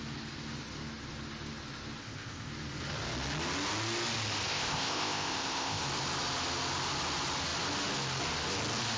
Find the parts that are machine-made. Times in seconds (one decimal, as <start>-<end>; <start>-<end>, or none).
2.0-2.5; 4.5-5.8

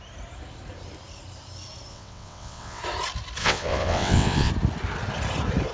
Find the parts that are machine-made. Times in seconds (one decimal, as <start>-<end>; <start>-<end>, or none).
1.9-2.8; 3.4-4.5

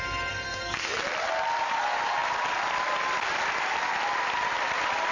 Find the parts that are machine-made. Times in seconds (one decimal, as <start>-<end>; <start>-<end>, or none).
none